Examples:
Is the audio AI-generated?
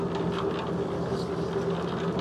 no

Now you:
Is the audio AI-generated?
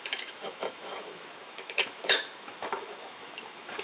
yes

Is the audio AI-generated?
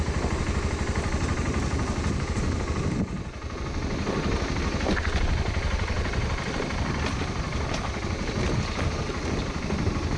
no